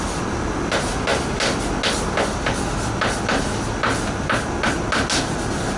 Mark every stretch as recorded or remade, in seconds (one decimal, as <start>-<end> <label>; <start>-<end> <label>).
0.0-5.8 recorded